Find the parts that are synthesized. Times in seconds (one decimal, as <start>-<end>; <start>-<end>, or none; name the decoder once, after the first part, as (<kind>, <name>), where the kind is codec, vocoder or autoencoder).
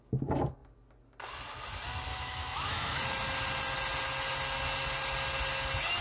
2.1-3.0 (autoencoder, DAC-VAE)